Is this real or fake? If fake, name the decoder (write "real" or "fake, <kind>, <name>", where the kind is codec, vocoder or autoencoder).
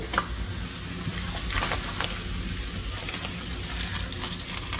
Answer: real